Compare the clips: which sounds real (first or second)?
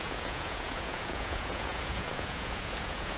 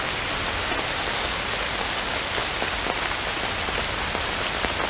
second